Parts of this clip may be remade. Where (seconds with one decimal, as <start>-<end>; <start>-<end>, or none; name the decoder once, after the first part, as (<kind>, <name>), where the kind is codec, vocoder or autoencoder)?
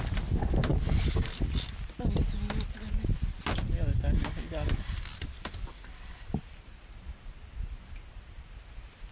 none